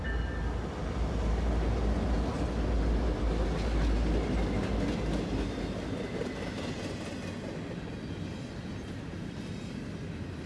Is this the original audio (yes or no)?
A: yes